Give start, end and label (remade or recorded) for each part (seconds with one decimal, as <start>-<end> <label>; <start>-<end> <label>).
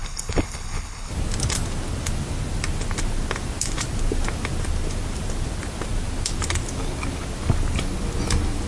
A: 0.0-1.1 remade; 1.1-8.7 recorded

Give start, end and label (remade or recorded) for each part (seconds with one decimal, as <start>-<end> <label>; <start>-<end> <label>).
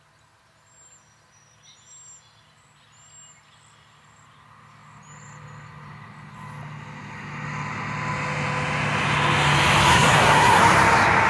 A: 0.0-9.9 recorded; 9.9-10.6 remade; 10.6-11.3 recorded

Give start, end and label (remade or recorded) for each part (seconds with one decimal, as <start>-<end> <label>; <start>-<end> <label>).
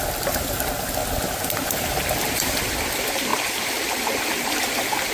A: 0.0-1.0 remade; 1.0-1.5 recorded; 1.5-5.1 remade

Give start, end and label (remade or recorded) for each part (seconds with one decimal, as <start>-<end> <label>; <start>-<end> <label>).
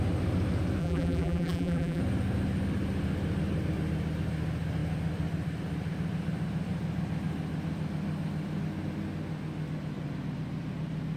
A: 0.0-0.8 recorded; 0.8-2.0 remade; 2.0-11.2 recorded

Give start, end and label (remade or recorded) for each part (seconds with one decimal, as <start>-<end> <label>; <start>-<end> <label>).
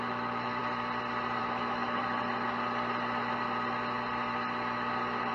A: 0.0-0.6 remade; 0.6-1.4 recorded; 1.4-2.0 remade; 2.0-5.3 recorded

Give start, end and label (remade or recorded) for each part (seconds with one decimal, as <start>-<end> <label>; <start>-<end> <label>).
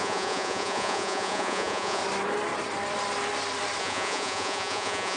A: 0.0-2.0 remade; 2.0-3.8 recorded; 3.8-5.2 remade